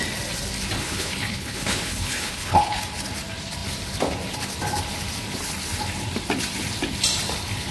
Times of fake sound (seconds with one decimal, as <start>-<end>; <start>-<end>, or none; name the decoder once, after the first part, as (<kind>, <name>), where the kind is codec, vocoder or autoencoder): 0.8-2.8 (codec, HILCodec)